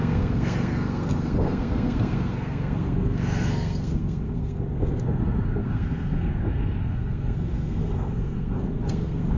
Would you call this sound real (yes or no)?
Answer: no